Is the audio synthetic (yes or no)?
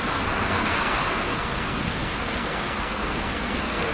yes